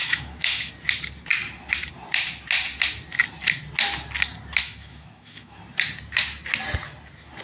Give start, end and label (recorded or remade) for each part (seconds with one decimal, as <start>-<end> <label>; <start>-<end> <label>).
0.0-0.7 remade; 0.7-4.6 recorded; 4.6-5.6 remade; 5.6-7.4 recorded